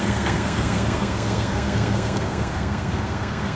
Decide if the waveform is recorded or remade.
remade